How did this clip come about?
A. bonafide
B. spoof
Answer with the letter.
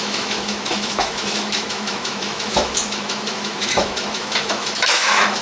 B